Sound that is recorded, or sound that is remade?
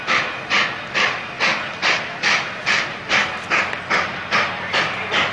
recorded